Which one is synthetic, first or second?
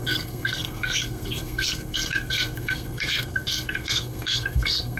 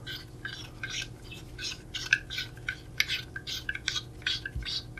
first